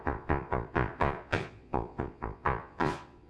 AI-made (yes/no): yes